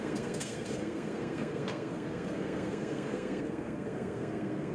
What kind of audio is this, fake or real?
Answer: fake